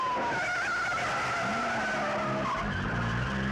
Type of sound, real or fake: real